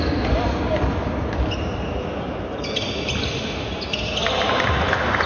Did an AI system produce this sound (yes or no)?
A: no